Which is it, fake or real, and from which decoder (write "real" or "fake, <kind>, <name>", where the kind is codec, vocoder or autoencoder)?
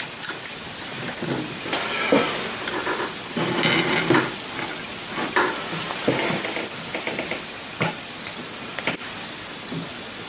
real